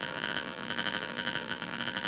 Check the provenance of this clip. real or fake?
fake